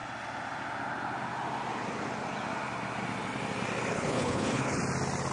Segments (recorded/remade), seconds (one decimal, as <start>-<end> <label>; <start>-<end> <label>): 0.0-3.9 recorded; 3.9-4.8 remade; 4.8-5.3 recorded